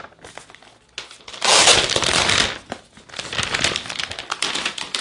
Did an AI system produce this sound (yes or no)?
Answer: no